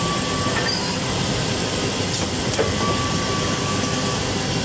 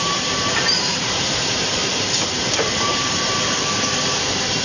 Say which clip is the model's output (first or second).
second